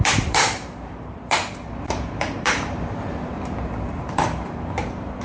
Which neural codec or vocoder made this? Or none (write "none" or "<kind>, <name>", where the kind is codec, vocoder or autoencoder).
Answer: vocoder, BigVGAN v2